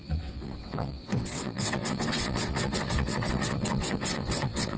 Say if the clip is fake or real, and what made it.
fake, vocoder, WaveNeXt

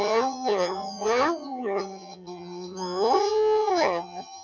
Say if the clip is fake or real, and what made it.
fake, vocoder, HiFi-GAN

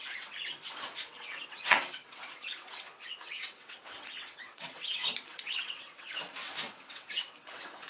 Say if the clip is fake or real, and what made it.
fake, vocoder, WaveNeXt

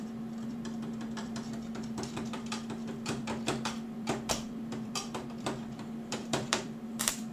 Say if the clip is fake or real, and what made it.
fake, vocoder, BigVGAN v2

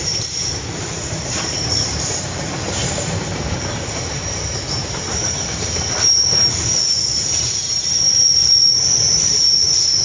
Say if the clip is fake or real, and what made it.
fake, vocoder, BigVGAN v2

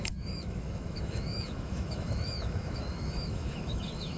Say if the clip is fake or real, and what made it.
fake, autoencoder, DAC-VAE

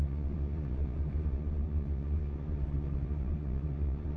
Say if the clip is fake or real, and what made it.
fake, vocoder, Vocos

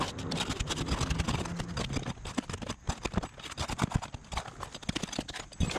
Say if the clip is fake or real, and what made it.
real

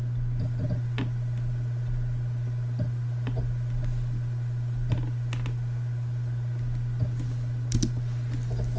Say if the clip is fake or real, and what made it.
real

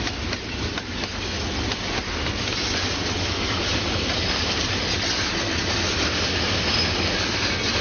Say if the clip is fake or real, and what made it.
real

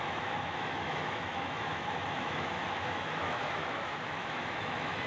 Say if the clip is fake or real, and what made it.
fake, autoencoder, DAC-VAE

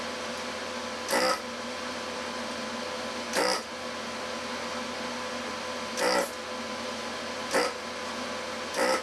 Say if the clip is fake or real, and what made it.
real